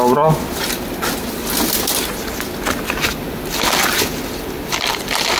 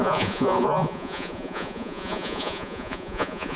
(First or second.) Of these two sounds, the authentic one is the first